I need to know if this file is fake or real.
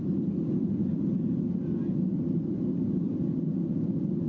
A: real